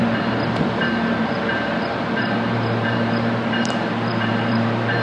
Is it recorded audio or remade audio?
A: remade